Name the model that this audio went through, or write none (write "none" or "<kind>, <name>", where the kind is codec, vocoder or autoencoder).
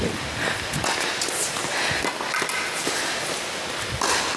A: none